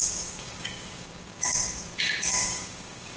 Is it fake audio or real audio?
fake